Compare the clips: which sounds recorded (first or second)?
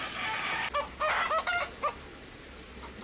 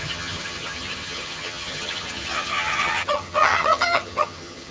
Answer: first